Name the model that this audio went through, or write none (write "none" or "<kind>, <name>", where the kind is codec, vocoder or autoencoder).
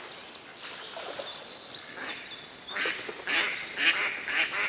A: none